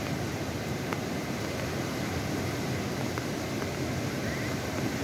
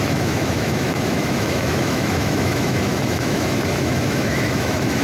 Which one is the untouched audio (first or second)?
first